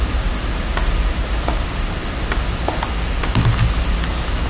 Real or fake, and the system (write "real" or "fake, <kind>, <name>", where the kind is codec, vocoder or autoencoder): real